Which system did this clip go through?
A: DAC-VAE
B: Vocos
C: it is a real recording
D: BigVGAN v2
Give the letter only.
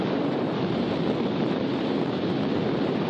D